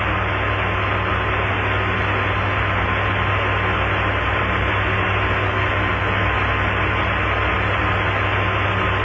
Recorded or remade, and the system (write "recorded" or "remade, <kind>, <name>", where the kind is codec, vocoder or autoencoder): recorded